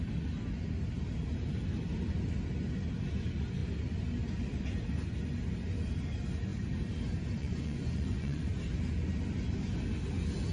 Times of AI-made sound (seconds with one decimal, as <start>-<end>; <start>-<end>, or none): 7.4-8.5